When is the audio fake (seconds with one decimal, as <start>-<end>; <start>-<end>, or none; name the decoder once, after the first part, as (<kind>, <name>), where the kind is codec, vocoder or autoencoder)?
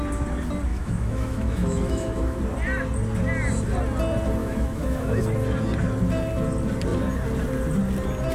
0.7-2.4 (autoencoder, DAC-VAE); 4.4-5.2